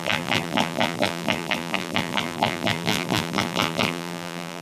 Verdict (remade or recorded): remade